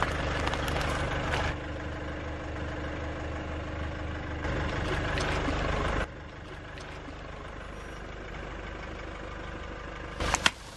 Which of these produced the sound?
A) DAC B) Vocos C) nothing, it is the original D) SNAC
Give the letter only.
C